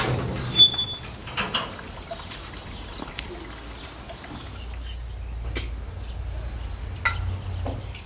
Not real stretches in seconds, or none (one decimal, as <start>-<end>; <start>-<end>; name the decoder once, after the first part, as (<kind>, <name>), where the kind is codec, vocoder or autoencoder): 1.2-3.3 (vocoder, BigVGAN v2)